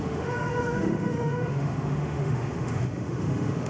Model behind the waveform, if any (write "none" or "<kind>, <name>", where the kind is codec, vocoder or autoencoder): autoencoder, DAC-VAE